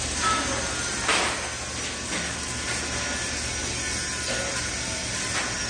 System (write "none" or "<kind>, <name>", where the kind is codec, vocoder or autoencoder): none